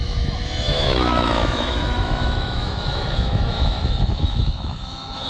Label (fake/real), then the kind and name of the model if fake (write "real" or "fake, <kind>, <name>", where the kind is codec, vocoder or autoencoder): fake, autoencoder, DAC-VAE